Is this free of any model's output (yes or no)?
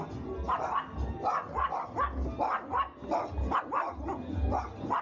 yes